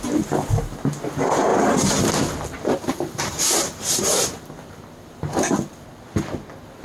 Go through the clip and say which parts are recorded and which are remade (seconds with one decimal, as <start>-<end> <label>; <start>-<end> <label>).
0.0-1.5 recorded; 1.5-2.0 remade; 2.0-2.9 recorded; 2.9-5.7 remade; 5.7-6.8 recorded